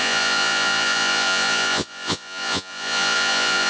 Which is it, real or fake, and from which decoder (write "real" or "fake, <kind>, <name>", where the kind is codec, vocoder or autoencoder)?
fake, vocoder, Vocos